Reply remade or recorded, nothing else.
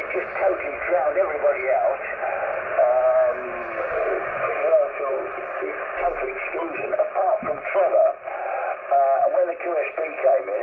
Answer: recorded